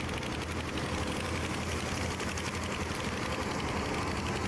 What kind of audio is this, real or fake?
real